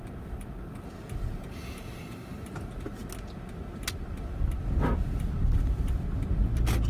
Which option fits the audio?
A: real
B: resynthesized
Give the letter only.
A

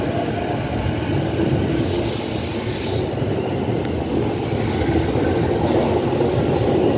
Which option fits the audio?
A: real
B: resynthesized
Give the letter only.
A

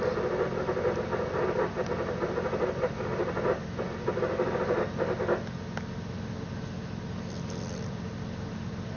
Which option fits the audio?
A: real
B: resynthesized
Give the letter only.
A